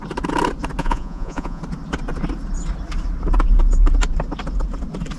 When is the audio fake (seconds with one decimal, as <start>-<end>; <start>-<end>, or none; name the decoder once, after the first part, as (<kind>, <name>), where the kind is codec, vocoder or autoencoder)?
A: 0.8-1.6 (vocoder, Vocos)